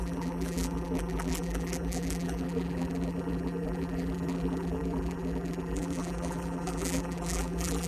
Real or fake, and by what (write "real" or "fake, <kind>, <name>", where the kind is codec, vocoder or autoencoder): fake, vocoder, BigVGAN v2